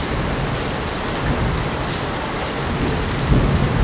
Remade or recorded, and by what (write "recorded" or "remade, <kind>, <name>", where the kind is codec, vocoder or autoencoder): recorded